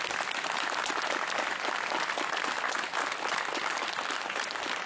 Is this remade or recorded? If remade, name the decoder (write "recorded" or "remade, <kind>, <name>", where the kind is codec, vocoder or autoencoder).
recorded